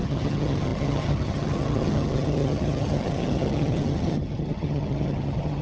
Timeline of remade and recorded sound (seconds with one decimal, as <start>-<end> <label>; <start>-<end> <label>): 0.0-5.6 remade